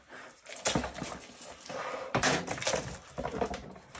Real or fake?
real